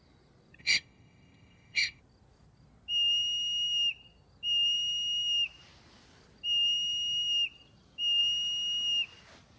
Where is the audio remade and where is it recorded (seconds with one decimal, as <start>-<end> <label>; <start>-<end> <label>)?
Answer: 0.0-0.6 recorded; 0.6-2.0 remade; 2.0-9.6 recorded